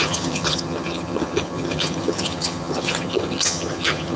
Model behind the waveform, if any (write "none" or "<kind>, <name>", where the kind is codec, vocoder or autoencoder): vocoder, HiFi-GAN